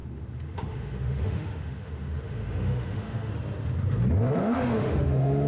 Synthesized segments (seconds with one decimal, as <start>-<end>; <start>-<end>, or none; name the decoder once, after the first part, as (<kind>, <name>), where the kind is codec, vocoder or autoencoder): 0.0-3.3 (autoencoder, DAC-VAE); 4.4-5.5

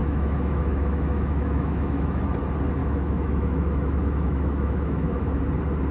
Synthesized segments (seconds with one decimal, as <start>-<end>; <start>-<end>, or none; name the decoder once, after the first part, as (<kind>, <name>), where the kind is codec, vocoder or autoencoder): 0.0-2.2 (autoencoder, DAC-VAE); 2.8-5.4

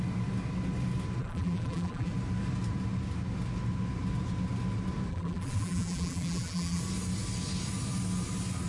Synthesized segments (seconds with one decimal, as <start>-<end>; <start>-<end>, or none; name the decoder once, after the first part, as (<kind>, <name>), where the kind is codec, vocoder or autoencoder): 1.2-2.1 (vocoder, BigVGAN v2); 5.1-6.8